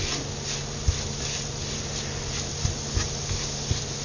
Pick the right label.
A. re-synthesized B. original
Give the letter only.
B